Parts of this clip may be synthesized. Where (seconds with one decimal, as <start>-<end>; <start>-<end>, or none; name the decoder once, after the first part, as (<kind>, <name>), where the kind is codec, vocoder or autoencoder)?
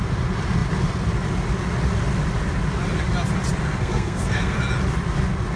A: 3.6-4.6 (codec, SNAC)